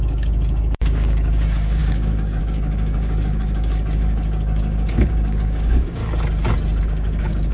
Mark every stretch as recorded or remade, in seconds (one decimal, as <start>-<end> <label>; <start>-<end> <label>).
0.0-6.0 remade; 6.0-6.8 recorded; 6.8-7.5 remade

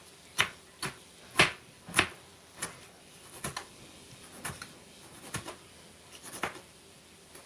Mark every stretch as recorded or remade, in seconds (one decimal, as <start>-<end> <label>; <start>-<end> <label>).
0.0-7.5 recorded

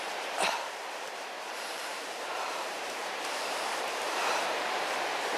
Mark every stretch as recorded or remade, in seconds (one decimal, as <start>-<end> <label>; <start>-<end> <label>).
0.0-5.4 remade

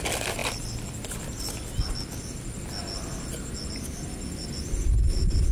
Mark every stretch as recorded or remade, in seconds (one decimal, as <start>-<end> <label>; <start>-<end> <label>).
0.0-5.5 recorded

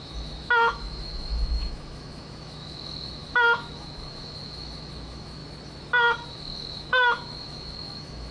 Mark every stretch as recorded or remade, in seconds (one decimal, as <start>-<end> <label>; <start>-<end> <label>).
0.0-5.4 remade; 5.4-6.3 recorded; 6.3-8.3 remade

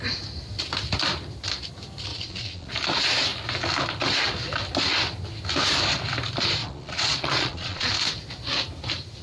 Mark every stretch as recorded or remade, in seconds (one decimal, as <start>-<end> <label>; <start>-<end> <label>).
0.0-2.1 recorded; 2.1-2.7 remade; 2.7-6.6 recorded; 6.6-7.9 remade; 7.9-9.2 recorded